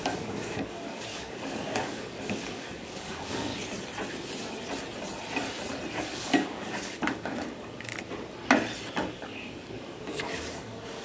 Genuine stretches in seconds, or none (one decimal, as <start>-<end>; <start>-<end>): 3.5-5.9; 7.9-9.1